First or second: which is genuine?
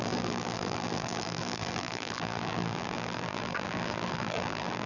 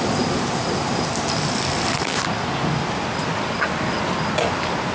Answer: second